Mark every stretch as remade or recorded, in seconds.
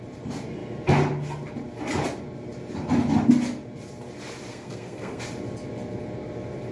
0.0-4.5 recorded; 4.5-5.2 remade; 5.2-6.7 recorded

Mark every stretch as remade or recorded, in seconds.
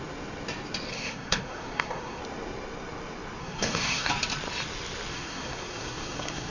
0.0-0.9 recorded; 0.9-2.2 remade; 2.2-3.4 recorded; 3.4-4.1 remade; 4.1-5.1 recorded; 5.1-6.5 remade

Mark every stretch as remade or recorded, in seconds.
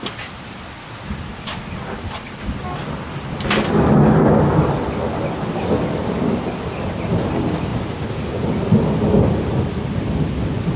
0.0-10.8 recorded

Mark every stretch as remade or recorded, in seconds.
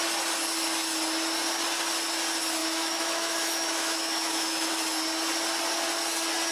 0.0-2.6 recorded; 2.6-4.7 remade; 4.7-6.5 recorded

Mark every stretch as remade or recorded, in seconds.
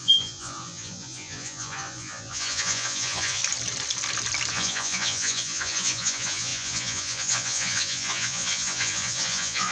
0.0-3.4 remade; 3.4-4.5 recorded; 4.5-9.7 remade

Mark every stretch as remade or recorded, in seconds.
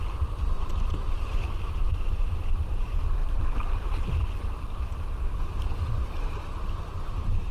0.0-7.5 recorded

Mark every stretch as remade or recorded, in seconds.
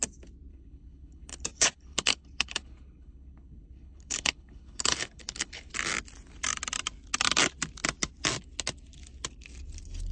0.0-0.5 recorded; 0.5-5.7 remade; 5.7-10.1 recorded